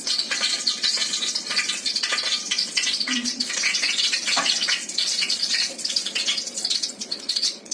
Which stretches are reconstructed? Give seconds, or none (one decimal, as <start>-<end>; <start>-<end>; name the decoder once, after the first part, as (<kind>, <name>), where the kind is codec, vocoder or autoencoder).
0.0-7.7 (vocoder, Vocos)